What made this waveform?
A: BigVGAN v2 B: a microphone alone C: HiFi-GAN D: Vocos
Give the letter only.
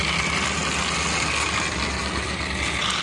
B